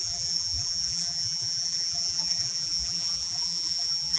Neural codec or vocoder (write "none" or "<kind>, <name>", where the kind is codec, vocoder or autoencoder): vocoder, BigVGAN v2